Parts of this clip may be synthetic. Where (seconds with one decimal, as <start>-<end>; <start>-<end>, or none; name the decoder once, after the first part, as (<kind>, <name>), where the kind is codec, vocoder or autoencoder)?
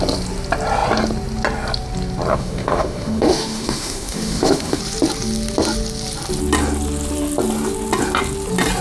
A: 2.3-4.8 (autoencoder, DAC-VAE)